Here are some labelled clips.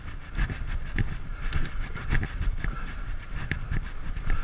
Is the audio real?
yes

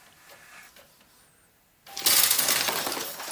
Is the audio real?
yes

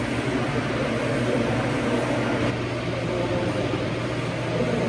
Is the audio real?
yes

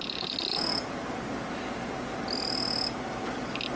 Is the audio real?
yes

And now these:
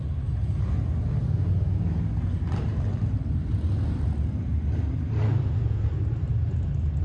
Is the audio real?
yes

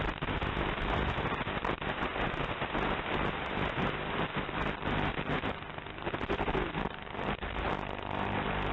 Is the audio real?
yes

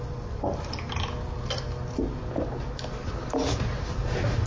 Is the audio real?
yes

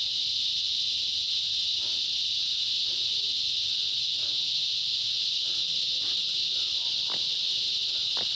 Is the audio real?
yes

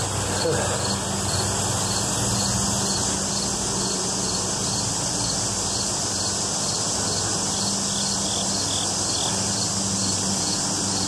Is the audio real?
yes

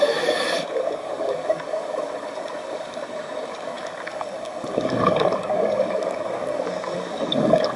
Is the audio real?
no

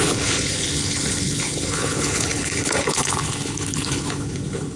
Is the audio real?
no